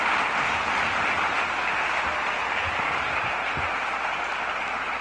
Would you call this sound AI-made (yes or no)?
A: no